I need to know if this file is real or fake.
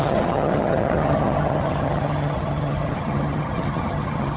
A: fake